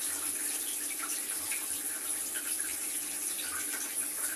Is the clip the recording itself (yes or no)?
yes